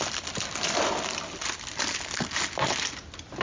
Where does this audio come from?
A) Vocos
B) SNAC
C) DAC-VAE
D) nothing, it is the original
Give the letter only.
D